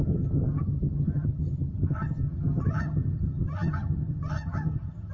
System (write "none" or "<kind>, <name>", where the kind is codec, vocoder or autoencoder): vocoder, HiFi-GAN